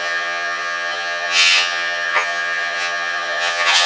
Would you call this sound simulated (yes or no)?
yes